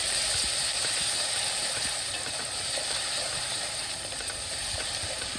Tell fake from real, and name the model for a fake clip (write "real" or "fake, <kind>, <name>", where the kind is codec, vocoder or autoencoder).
fake, vocoder, BigVGAN v2